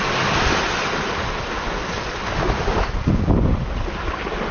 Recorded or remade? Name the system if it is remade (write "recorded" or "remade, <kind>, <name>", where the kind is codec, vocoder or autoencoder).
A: recorded